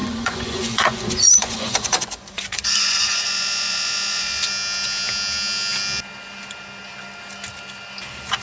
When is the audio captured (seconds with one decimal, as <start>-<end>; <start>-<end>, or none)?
4.5-8.4